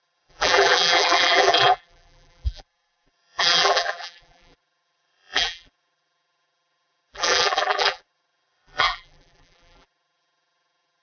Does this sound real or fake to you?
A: fake